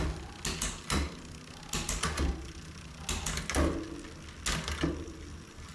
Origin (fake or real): real